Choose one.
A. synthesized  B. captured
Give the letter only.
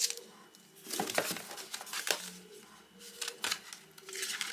B